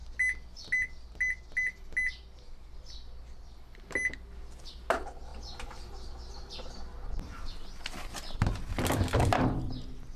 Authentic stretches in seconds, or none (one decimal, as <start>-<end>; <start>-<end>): 0.0-10.2